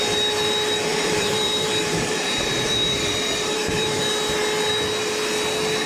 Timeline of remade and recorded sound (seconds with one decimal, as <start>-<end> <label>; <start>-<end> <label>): 0.0-0.9 recorded; 0.9-4.0 remade; 4.0-5.9 recorded